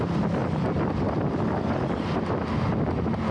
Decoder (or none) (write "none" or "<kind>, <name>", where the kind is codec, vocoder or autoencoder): none